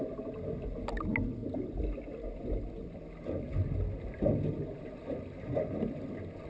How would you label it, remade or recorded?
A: recorded